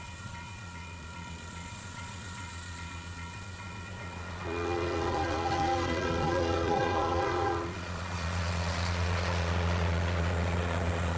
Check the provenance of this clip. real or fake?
fake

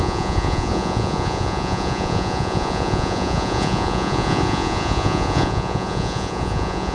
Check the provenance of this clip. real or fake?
fake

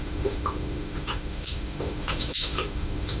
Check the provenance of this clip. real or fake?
fake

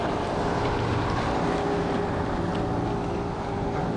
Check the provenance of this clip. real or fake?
real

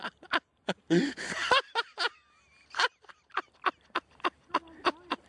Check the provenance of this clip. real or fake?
real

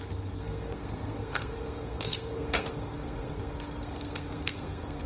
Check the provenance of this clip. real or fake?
fake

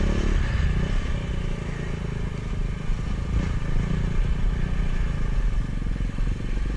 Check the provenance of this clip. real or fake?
real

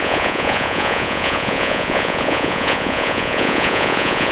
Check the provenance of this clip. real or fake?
fake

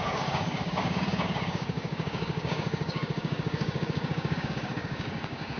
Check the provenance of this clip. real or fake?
fake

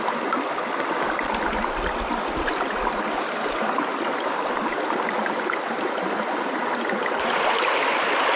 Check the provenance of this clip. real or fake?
real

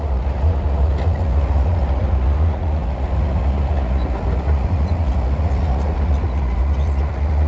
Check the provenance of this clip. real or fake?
fake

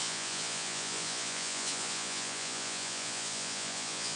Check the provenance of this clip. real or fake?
fake